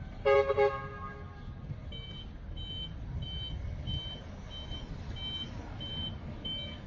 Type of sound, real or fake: real